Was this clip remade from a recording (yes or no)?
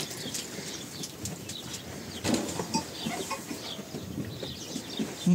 no